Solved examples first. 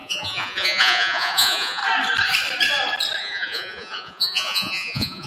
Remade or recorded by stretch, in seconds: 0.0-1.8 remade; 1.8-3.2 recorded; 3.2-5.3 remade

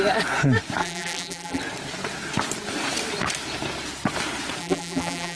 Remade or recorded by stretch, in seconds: 0.0-0.8 recorded; 0.8-1.6 remade; 1.6-4.6 recorded; 4.6-5.4 remade

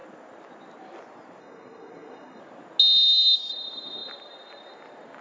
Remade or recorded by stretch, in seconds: 0.0-1.4 recorded; 1.4-2.4 remade; 2.4-5.2 recorded

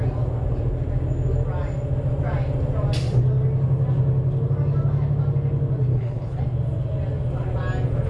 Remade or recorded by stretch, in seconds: 0.0-5.9 recorded; 5.9-6.4 remade; 6.4-8.1 recorded

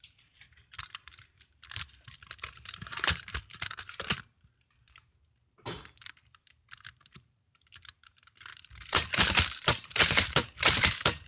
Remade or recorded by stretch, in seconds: 0.0-11.3 remade

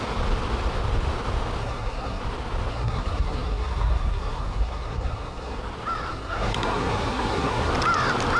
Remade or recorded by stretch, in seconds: 0.0-1.6 recorded; 1.6-2.2 remade; 2.2-2.7 recorded; 2.7-5.6 remade; 5.6-6.1 recorded; 6.1-7.7 remade; 7.7-8.4 recorded